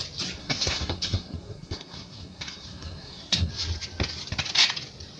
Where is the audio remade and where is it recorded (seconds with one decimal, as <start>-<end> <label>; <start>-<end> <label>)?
0.0-0.4 recorded; 0.4-3.5 remade; 3.5-5.2 recorded